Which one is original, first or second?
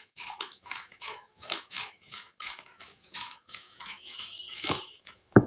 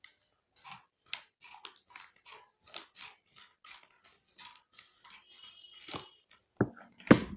second